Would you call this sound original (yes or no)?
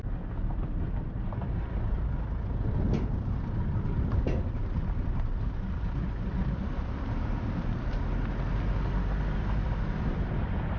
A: yes